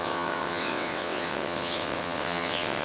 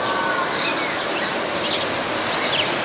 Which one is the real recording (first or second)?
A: second